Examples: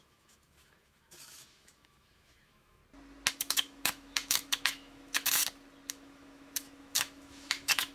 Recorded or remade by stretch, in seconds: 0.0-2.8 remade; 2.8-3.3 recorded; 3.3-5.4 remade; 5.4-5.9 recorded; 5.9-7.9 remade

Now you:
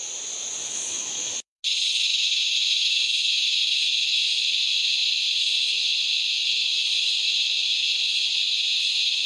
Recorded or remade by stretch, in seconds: 0.0-0.6 recorded; 0.6-1.6 remade; 1.6-2.1 recorded; 2.1-3.8 remade; 3.8-9.3 recorded

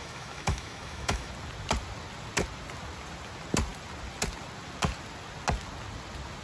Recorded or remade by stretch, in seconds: 0.0-1.3 remade; 1.3-6.4 recorded